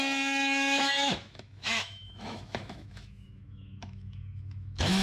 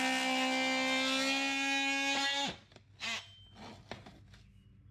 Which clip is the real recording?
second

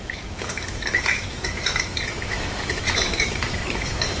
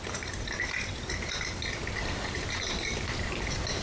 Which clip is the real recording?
second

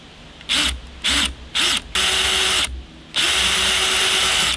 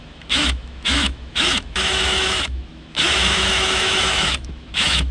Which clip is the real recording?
first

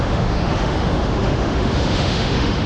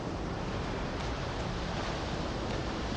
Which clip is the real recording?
second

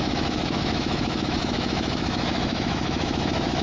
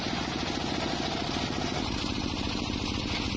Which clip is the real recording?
second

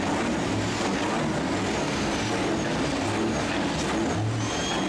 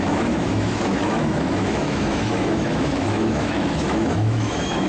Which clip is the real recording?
first